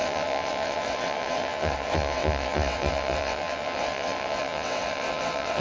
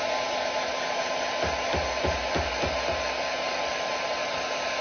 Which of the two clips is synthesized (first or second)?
first